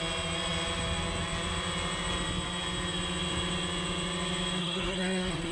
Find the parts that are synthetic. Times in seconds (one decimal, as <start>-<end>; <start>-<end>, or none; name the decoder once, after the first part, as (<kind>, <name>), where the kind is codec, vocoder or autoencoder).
4.6-5.5 (codec, SNAC)